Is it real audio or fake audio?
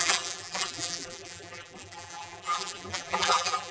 fake